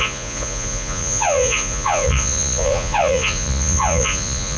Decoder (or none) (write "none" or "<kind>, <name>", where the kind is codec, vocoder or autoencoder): vocoder, Vocos